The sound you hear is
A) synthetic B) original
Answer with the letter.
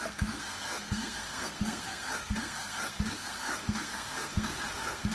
A